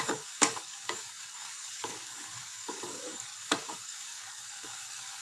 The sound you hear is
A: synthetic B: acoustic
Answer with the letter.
A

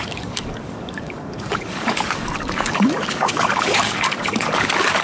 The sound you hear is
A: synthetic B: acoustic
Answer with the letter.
A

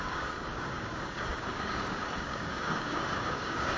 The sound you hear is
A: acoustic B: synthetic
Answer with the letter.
B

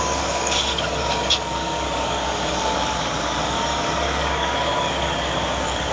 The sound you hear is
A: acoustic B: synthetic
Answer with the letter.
B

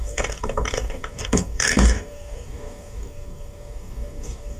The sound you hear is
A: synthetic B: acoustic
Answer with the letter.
A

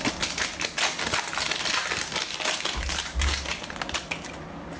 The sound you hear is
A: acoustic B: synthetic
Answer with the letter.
A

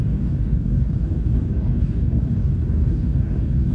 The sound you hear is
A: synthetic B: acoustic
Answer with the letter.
A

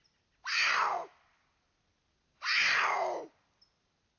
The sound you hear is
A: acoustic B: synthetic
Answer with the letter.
A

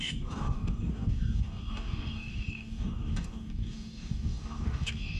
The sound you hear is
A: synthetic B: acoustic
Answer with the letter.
A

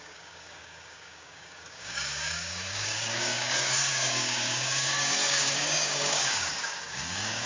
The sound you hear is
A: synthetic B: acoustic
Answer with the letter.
A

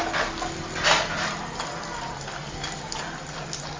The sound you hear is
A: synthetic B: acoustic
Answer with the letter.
B